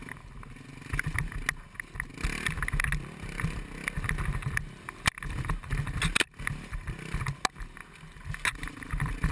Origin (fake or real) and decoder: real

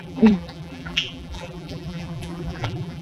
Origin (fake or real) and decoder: fake, vocoder, BigVGAN v2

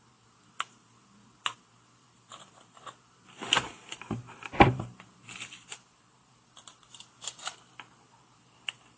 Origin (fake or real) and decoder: fake, vocoder, BigVGAN v2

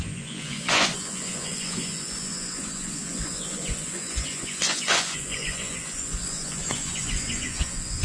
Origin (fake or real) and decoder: fake, vocoder, Vocos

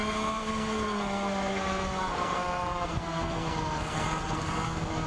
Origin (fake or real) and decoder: fake, codec, SNAC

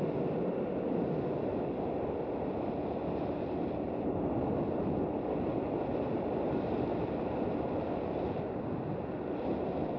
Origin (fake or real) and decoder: real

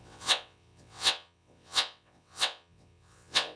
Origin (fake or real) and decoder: fake, vocoder, WaveNeXt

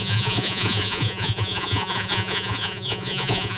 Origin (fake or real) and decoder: fake, vocoder, Vocos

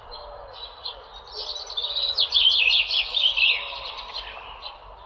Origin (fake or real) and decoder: real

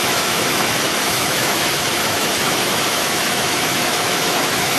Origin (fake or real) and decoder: fake, autoencoder, DAC-VAE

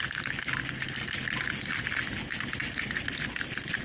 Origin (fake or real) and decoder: real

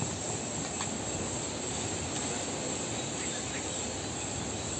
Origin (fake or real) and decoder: real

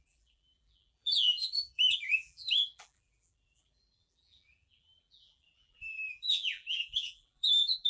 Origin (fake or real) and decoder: fake, vocoder, BigVGAN v2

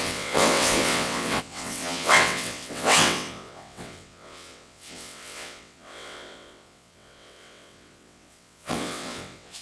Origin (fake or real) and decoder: fake, vocoder, WaveNeXt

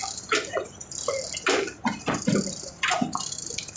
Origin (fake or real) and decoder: real